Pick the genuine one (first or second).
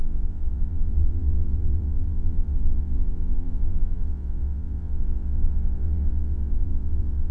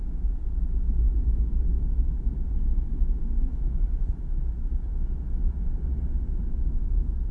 second